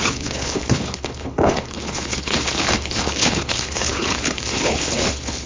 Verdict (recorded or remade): remade